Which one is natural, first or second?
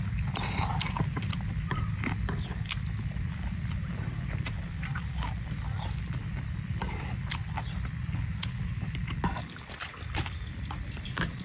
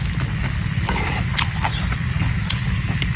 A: second